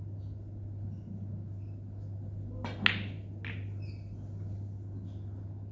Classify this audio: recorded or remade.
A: recorded